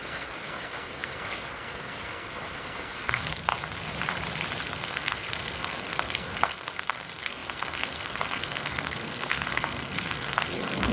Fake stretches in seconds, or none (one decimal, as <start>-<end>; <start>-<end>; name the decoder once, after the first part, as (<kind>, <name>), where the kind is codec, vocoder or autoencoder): 0.0-3.5 (codec, SNAC); 4.6-10.9